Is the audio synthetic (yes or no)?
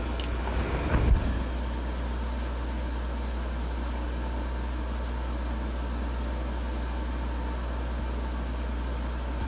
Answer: no